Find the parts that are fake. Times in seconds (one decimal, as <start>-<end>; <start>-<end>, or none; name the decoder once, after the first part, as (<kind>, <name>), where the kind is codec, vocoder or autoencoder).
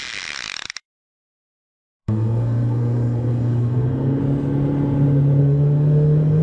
1.0-4.2 (codec, SNAC); 5.4-6.4